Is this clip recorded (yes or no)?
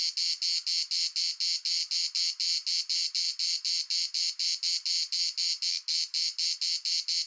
yes